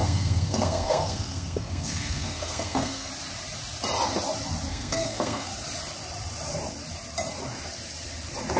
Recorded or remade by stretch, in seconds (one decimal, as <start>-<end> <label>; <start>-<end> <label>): 0.0-3.1 remade; 3.1-4.7 recorded; 4.7-5.5 remade; 5.5-8.6 recorded